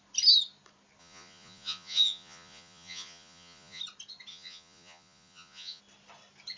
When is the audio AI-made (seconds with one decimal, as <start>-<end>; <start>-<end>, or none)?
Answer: 1.0-3.8; 4.3-5.8